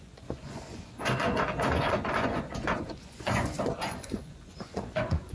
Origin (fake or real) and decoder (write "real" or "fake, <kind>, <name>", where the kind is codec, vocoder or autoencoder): fake, vocoder, Vocos